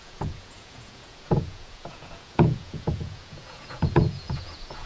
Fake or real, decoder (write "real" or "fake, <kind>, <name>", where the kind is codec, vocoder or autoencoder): fake, vocoder, Vocos